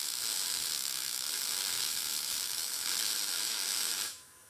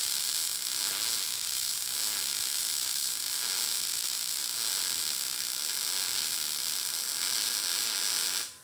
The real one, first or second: second